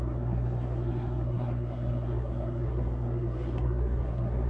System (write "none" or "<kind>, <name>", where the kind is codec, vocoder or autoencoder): codec, SNAC